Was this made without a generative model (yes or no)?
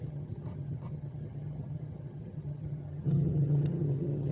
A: no